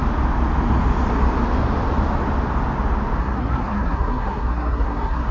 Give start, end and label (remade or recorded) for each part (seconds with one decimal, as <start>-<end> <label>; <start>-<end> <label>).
0.0-3.2 recorded; 3.2-5.3 remade